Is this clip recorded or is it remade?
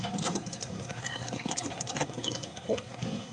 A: remade